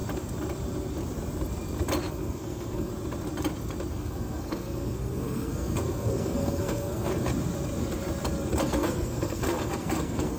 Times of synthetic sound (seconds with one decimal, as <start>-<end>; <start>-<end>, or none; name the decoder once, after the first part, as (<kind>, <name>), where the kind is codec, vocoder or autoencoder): 2.1-2.9 (codec, SNAC); 3.9-7.3; 8.6-10.4